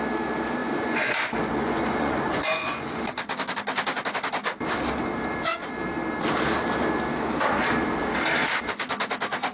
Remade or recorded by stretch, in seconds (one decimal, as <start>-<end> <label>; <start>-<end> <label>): 0.0-0.6 recorded; 0.6-3.0 remade; 3.0-9.5 recorded